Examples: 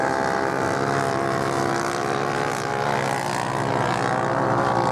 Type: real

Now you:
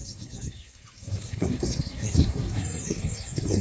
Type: fake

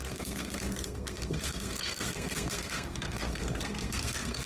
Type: fake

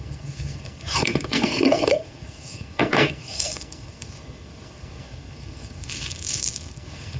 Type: fake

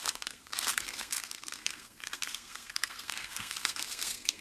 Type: fake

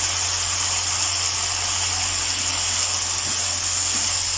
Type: real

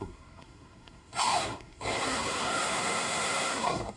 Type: fake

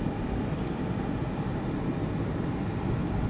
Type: real